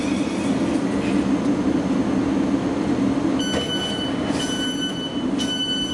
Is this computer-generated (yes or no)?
no